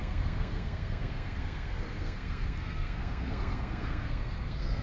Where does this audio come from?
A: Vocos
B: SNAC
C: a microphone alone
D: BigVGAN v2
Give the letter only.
B